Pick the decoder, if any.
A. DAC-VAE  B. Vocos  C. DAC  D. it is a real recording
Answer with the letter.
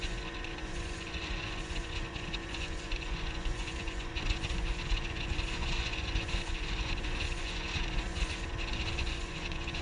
B